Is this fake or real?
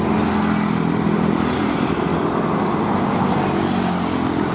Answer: real